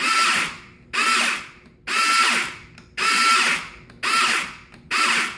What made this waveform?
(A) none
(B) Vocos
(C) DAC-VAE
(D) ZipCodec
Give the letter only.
A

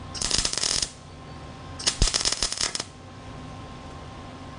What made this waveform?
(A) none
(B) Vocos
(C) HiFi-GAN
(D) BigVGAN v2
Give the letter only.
B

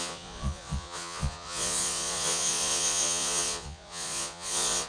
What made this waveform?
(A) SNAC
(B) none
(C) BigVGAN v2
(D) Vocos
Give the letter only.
D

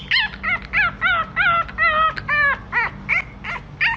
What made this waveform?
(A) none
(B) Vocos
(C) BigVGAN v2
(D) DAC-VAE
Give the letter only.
A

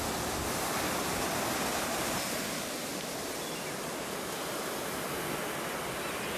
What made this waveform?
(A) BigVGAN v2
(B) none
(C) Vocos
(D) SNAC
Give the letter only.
B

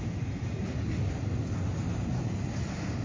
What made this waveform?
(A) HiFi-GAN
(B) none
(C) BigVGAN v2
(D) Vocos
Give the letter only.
B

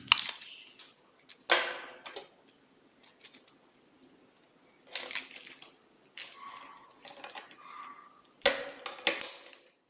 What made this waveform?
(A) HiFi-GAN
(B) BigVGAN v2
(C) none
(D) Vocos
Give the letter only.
C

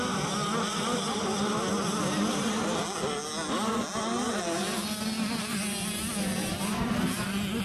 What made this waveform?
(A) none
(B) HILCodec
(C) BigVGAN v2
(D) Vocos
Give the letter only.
A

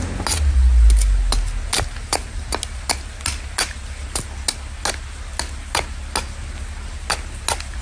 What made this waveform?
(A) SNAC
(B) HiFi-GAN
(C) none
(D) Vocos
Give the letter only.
C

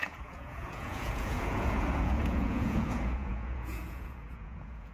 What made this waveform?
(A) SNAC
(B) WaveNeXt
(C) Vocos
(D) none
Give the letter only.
C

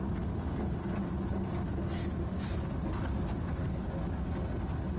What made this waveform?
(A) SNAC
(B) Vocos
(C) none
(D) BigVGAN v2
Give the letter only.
C